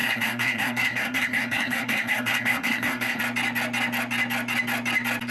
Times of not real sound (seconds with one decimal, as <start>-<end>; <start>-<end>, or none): 0.0-3.2